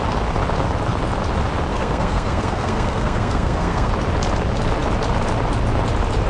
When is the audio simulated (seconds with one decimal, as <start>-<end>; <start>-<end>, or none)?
1.7-3.9